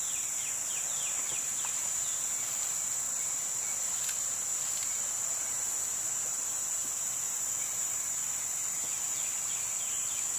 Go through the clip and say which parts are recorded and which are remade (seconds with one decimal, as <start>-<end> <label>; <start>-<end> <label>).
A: 0.0-10.4 recorded